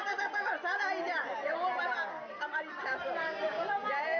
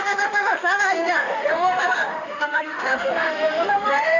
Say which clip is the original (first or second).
first